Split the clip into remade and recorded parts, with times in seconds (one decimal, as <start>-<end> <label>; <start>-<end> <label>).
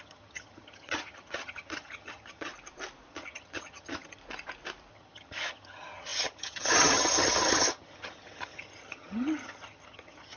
0.0-2.5 remade; 2.5-3.1 recorded; 3.1-4.2 remade; 4.2-4.9 recorded; 4.9-10.4 remade